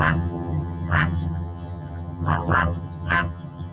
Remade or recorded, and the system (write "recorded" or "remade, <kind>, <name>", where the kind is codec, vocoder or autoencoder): remade, vocoder, HiFi-GAN